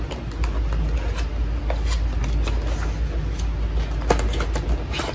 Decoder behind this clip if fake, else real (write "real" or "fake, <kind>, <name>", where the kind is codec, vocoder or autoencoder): real